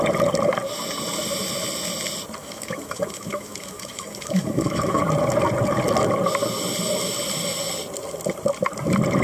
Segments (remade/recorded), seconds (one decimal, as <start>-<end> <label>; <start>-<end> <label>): 0.0-2.4 recorded; 2.4-5.0 remade; 5.0-9.2 recorded